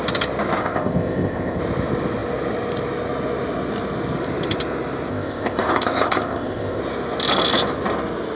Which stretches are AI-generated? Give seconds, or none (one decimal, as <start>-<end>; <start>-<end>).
0.6-1.6; 5.1-6.8